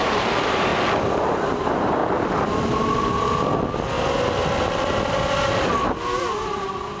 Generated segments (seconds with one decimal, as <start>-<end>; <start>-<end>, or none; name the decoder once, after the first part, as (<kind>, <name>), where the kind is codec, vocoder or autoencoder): 0.0-0.7 (vocoder, BigVGAN v2); 1.3-2.0; 6.2-7.0